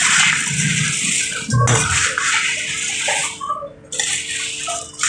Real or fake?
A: real